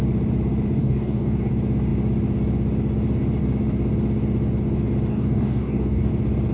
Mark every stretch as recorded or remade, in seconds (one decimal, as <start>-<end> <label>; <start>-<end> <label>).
0.0-0.8 recorded; 0.8-1.5 remade; 1.5-5.1 recorded; 5.1-6.1 remade; 6.1-6.5 recorded